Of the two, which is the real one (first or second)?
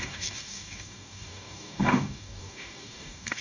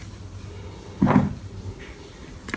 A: second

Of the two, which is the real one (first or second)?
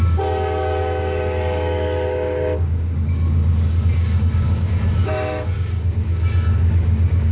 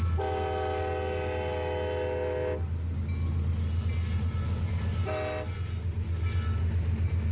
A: second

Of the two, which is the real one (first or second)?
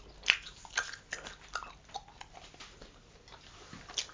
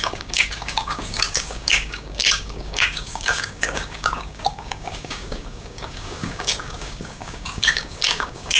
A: first